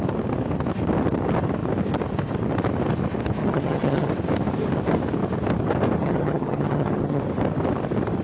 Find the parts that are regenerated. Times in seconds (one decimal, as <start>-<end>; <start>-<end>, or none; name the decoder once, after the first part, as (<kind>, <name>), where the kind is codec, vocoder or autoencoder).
3.4-4.1 (vocoder, HiFi-GAN); 6.0-7.2